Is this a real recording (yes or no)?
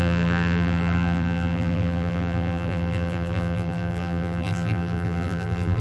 no